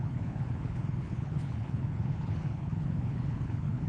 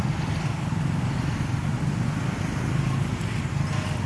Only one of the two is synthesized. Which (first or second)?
first